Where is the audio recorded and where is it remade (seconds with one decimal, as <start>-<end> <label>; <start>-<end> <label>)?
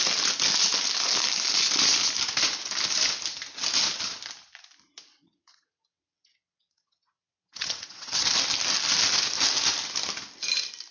0.0-5.1 recorded; 5.1-8.2 remade; 8.2-10.9 recorded